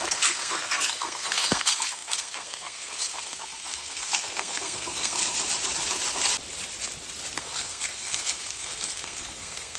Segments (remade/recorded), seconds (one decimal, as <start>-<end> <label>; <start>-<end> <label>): 0.0-5.2 remade; 5.2-7.4 recorded; 7.4-9.8 remade